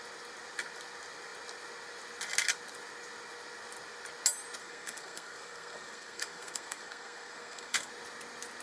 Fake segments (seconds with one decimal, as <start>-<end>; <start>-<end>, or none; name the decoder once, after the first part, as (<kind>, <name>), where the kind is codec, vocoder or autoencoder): 4.6-7.9 (codec, SNAC)